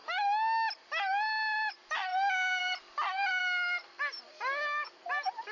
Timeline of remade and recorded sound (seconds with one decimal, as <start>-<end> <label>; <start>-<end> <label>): 0.0-1.7 recorded; 1.7-2.1 remade; 2.1-2.6 recorded; 2.6-3.4 remade; 3.4-5.5 recorded